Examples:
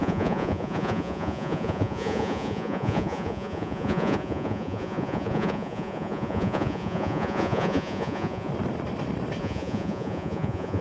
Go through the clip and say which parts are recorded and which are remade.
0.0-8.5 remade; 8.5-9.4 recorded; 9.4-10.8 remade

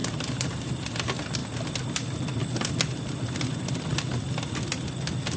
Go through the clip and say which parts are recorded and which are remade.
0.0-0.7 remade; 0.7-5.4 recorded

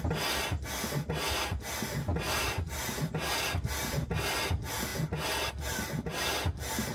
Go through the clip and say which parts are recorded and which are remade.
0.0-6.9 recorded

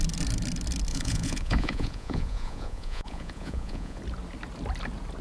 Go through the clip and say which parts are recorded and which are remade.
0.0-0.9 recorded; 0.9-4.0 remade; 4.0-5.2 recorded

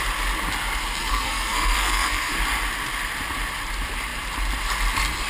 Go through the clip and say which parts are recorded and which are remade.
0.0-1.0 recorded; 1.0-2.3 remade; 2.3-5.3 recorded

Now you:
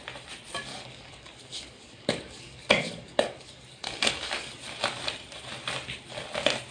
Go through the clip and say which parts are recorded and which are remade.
0.0-0.7 recorded; 0.7-4.6 remade; 4.6-6.7 recorded

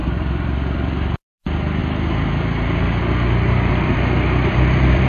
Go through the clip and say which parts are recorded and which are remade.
0.0-1.8 remade; 1.8-3.7 recorded; 3.7-5.1 remade